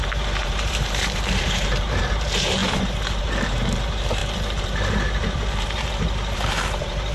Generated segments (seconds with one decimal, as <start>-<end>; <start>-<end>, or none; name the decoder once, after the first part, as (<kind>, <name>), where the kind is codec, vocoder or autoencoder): 0.0-7.1 (vocoder, BigVGAN v2)